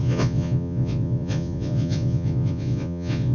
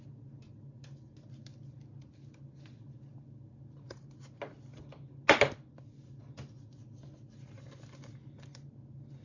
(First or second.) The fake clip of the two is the first